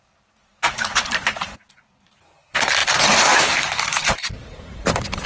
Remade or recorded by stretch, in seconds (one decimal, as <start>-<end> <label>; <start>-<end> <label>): 0.0-5.3 remade